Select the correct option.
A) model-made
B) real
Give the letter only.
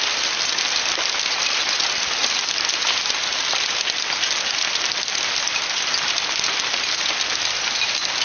B